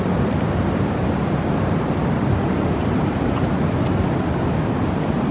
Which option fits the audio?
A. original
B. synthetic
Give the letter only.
B